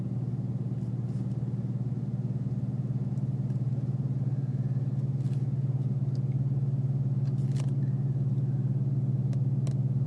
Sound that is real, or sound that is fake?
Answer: real